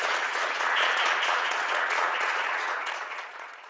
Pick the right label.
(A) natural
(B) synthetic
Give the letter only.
B